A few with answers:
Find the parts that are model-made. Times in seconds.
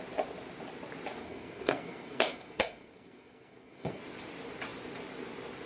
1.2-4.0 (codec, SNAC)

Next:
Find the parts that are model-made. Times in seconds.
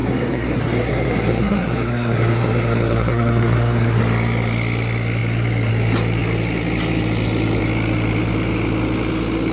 0.0-4.0 (codec, SNAC)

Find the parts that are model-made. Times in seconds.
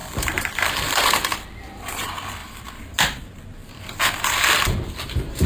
0.0-1.1 (vocoder, BigVGAN v2); 2.4-2.9; 3.6-5.5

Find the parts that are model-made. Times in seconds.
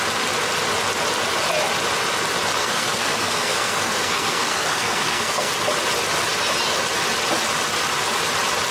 2.6-5.5 (codec, SNAC)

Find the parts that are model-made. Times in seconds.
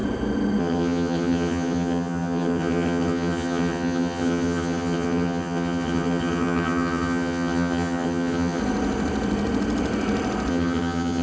0.6-8.6 (vocoder, HiFi-GAN); 10.5-11.2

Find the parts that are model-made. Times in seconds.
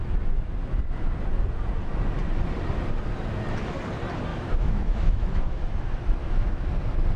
4.3-5.6 (autoencoder, DAC-VAE); 6.2-6.7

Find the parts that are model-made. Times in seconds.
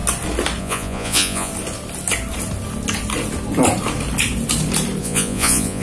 0.6-1.5 (vocoder, Vocos); 5.0-5.8